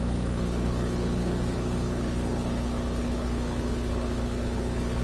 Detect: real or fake fake